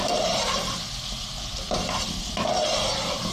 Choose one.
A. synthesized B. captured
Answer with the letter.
B